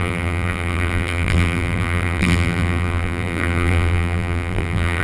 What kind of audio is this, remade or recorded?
remade